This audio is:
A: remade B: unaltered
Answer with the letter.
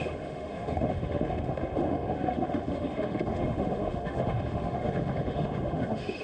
A